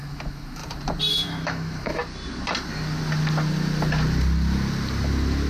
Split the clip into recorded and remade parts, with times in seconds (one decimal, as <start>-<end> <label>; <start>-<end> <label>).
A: 0.0-0.6 remade; 0.6-1.1 recorded; 1.1-2.0 remade; 2.0-5.5 recorded